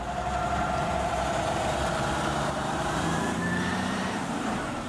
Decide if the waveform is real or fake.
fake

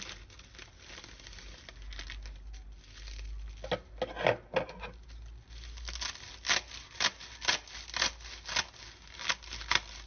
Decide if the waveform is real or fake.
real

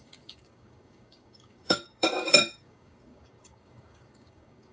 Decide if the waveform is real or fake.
fake